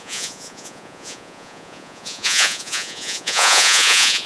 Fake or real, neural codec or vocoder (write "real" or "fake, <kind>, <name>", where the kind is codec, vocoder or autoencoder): fake, vocoder, Vocos